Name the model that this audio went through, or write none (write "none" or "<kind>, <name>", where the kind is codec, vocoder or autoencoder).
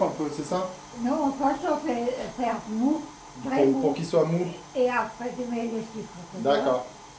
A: none